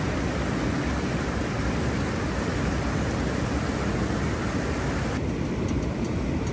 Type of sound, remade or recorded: recorded